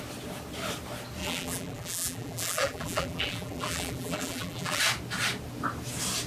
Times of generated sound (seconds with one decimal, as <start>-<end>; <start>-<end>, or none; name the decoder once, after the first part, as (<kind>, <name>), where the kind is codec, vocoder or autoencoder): 1.2-4.8 (vocoder, BigVGAN v2)